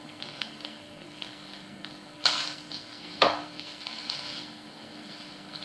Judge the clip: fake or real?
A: fake